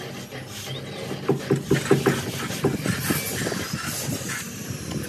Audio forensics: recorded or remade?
recorded